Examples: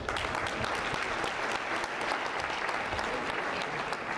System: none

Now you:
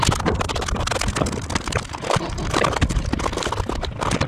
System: none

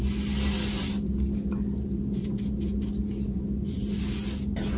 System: none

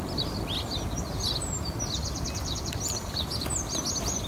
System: none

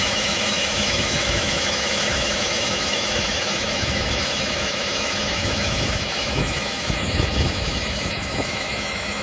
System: autoencoder, DAC-VAE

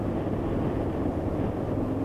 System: none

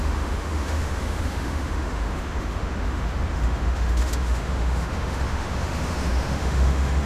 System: autoencoder, DAC-VAE